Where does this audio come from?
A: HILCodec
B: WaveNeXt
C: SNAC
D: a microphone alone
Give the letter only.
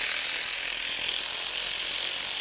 D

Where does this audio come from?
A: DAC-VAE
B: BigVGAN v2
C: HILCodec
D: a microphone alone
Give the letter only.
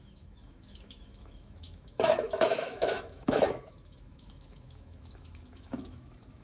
A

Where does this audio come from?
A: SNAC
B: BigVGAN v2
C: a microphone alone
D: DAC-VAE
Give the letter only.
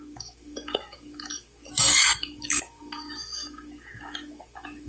D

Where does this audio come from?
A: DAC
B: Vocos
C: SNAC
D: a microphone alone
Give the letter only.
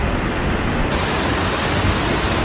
D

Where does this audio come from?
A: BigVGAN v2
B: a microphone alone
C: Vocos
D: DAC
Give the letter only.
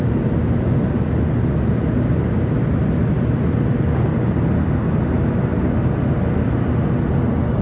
B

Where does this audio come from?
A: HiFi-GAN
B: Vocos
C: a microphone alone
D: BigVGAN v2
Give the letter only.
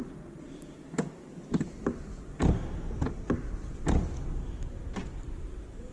C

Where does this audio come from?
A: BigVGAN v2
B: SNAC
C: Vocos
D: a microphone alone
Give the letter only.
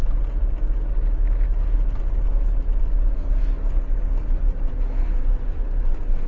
D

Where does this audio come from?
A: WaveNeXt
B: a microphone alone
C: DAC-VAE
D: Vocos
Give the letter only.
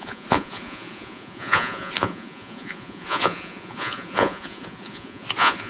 D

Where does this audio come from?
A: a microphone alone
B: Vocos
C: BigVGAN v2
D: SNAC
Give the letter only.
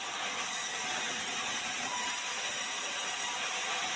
A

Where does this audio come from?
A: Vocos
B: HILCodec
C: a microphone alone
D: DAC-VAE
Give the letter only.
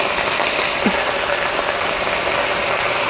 C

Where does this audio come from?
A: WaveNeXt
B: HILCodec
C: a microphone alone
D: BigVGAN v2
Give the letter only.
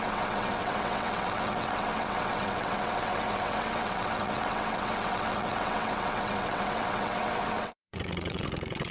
A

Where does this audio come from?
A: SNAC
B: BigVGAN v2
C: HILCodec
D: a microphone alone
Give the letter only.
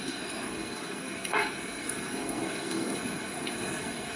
A